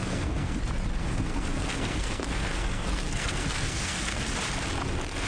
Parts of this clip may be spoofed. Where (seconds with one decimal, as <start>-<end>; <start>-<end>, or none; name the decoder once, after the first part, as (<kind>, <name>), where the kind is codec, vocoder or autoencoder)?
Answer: 0.0-0.6 (codec, SNAC); 1.0-4.2